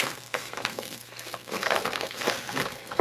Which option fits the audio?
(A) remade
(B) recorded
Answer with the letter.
A